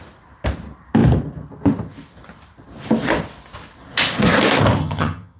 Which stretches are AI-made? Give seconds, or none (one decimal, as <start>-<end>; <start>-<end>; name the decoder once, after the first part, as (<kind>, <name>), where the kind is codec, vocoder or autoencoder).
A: 4.8-5.4 (vocoder, HiFi-GAN)

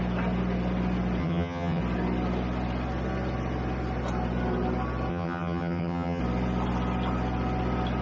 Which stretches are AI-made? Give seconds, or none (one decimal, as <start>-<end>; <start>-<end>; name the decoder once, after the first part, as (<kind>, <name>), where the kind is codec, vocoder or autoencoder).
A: 1.2-1.8 (vocoder, HiFi-GAN); 5.1-6.2

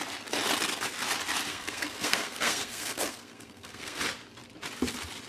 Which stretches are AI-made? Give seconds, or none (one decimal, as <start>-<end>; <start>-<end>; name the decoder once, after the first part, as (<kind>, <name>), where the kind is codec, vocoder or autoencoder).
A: 1.5-4.0 (codec, SNAC)